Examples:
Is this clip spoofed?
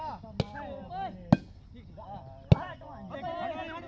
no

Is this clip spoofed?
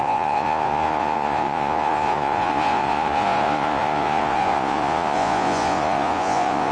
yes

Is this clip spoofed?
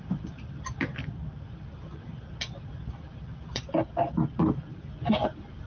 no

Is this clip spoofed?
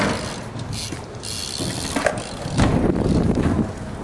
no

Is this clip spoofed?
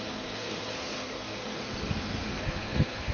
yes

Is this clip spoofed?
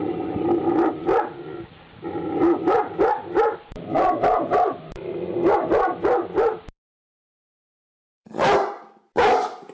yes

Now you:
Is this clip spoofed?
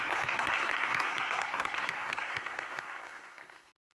yes